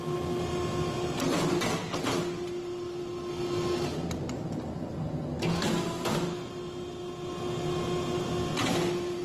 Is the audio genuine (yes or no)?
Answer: yes